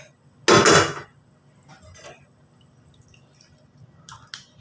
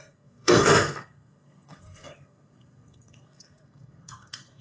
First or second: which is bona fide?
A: first